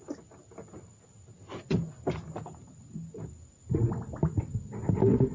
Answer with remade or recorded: recorded